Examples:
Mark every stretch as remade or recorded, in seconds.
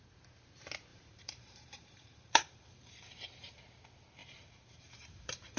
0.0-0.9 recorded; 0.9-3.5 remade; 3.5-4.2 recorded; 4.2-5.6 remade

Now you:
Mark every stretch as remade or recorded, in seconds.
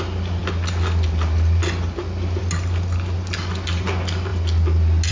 0.0-5.1 recorded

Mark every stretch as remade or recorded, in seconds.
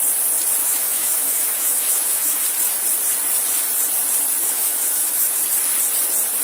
0.0-0.6 recorded; 0.6-2.4 remade; 2.4-4.4 recorded; 4.4-5.4 remade; 5.4-6.4 recorded